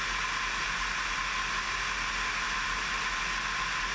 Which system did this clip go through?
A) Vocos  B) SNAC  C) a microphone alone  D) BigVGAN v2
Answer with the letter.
C